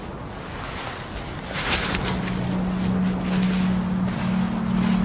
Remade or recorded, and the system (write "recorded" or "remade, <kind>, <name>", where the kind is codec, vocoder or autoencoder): recorded